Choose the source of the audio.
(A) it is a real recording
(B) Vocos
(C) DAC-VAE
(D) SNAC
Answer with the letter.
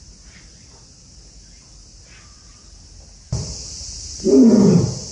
A